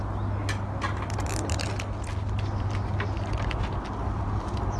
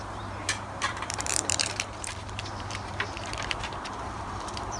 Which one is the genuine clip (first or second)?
first